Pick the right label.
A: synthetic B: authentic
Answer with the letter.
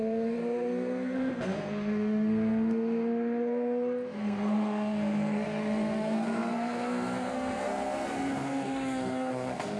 A